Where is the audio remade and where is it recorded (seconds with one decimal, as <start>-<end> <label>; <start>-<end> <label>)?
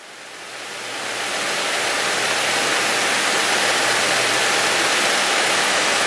0.0-5.2 recorded; 5.2-6.1 remade